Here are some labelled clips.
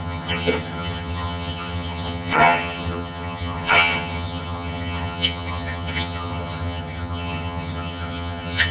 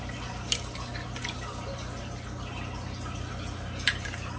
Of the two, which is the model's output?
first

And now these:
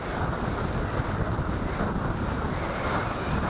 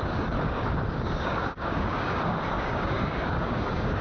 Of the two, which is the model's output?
second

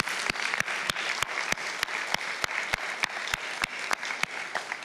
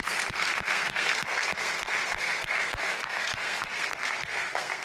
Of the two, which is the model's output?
second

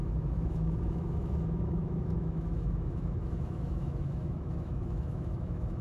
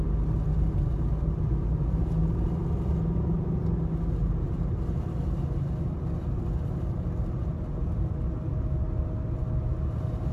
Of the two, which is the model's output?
first